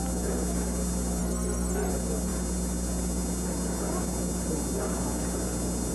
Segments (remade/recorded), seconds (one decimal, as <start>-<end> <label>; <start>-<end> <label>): 0.0-1.2 recorded; 1.2-1.9 remade; 1.9-5.9 recorded